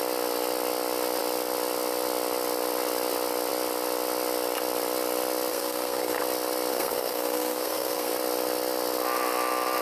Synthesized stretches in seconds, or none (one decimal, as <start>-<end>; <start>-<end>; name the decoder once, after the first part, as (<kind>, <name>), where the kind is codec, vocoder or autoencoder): 5.5-6.2 (codec, SNAC); 6.7-8.1